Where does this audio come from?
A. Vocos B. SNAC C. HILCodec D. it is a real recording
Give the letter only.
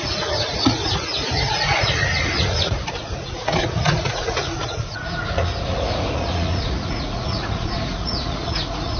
A